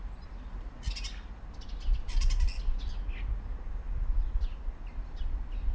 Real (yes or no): yes